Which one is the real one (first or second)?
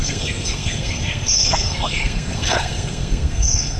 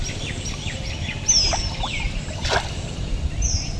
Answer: second